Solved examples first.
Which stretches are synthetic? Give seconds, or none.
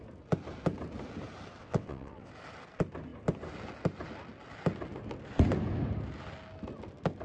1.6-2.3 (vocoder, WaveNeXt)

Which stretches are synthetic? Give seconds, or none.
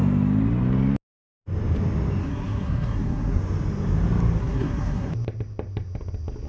2.2-3.4 (codec, SNAC); 4.4-5.1